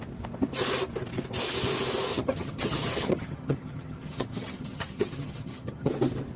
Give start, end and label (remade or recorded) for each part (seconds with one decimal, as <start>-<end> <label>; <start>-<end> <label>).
0.0-2.1 recorded; 2.1-5.9 remade; 5.9-6.4 recorded